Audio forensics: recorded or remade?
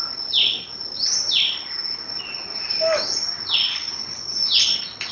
recorded